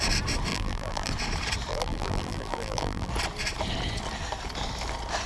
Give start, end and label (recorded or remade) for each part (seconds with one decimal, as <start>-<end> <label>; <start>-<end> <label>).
0.0-0.5 recorded; 0.5-1.1 remade; 1.1-1.7 recorded; 1.7-3.1 remade; 3.1-5.3 recorded